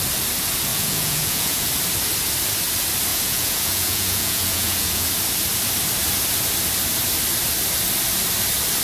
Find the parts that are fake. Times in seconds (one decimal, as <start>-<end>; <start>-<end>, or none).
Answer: 0.7-1.7; 3.1-5.1